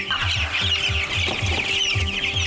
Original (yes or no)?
yes